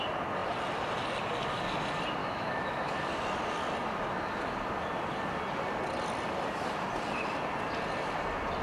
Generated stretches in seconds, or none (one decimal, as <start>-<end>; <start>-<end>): 2.2-2.9